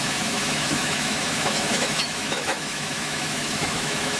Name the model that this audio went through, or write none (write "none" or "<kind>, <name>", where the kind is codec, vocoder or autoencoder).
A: autoencoder, DAC-VAE